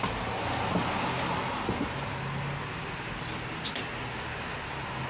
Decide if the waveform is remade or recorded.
recorded